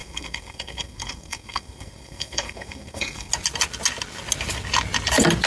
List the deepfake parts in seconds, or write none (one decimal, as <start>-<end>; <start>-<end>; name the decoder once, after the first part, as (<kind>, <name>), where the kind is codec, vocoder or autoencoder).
0.0-3.3 (codec, SNAC)